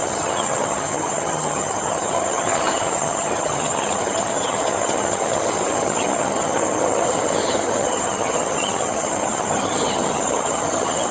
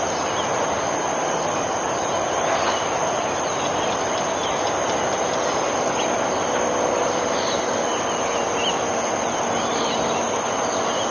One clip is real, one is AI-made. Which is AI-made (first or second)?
first